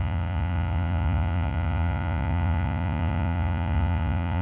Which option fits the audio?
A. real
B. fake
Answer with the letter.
B